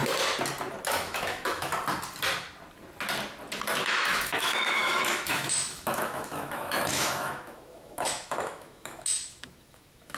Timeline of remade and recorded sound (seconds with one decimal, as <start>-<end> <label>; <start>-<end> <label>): 0.0-0.9 recorded; 0.9-1.7 remade; 1.7-3.8 recorded; 3.8-10.2 remade